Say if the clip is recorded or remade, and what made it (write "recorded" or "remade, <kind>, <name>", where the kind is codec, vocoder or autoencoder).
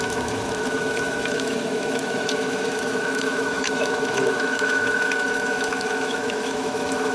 remade, autoencoder, DAC-VAE